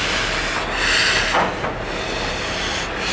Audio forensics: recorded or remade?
recorded